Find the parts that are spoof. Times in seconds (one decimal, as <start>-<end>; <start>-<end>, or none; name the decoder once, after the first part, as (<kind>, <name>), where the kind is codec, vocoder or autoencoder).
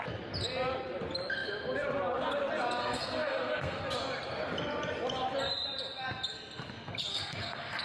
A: 2.8-3.8 (codec, SNAC); 7.1-7.8